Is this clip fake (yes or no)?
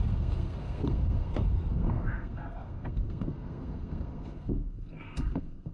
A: yes